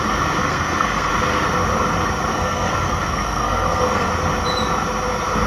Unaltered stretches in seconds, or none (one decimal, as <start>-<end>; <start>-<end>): 0.0-0.4; 1.1-2.3; 4.1-5.5